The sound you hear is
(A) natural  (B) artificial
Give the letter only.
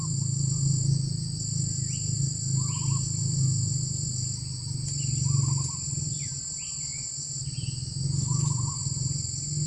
A